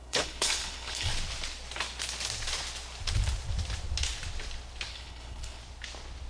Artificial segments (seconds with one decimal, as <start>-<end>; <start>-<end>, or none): 0.0-1.1; 4.9-5.6